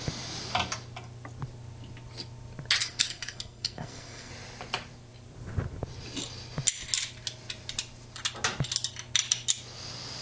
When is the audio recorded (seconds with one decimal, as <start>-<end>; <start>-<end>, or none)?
0.0-2.8; 4.3-10.2